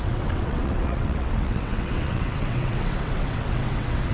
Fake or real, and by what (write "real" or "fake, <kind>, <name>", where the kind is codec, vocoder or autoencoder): fake, vocoder, WaveNeXt